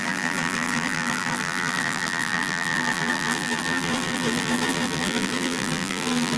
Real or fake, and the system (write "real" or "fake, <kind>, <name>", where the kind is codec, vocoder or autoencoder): fake, vocoder, BigVGAN v2